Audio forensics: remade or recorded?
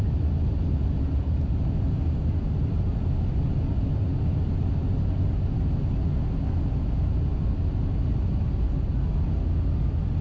recorded